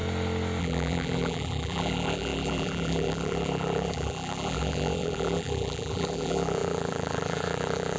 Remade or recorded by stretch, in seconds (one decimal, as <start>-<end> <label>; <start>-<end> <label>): 0.0-0.6 recorded; 0.6-8.0 remade